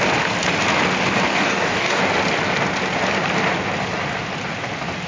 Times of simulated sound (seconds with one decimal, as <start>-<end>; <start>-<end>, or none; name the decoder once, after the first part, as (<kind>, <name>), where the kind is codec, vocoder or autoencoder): 1.3-2.0 (codec, DAC)